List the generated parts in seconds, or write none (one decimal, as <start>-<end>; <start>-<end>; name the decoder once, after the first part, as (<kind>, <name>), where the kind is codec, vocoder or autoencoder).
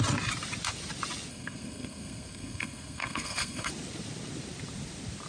1.3-3.7 (codec, SNAC)